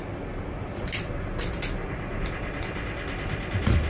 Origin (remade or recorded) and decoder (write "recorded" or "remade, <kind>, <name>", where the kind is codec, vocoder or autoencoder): recorded